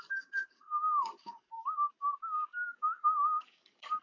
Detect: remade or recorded remade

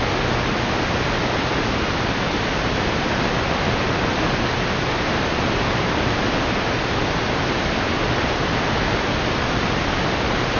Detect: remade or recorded recorded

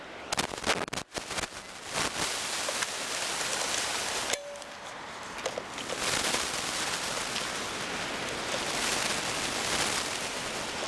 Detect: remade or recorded recorded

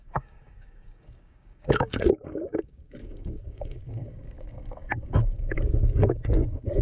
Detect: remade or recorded remade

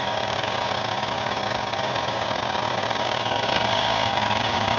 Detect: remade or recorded remade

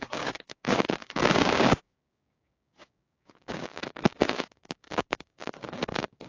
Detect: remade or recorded remade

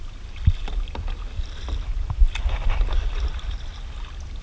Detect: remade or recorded recorded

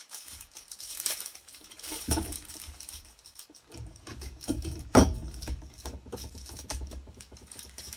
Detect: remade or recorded remade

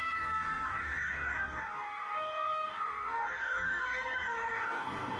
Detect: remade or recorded remade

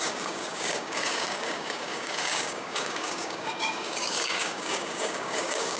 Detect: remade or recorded remade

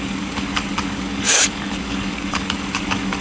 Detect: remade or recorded remade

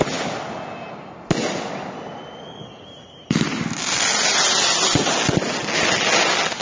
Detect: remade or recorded recorded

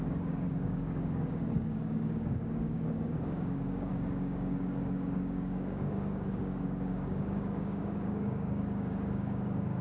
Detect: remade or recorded remade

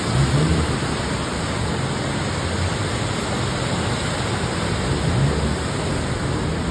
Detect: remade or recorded recorded